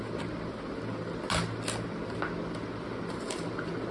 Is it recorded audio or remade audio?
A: recorded